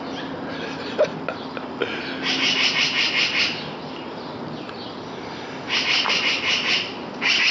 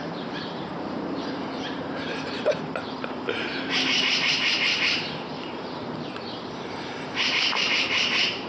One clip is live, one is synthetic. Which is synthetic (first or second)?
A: second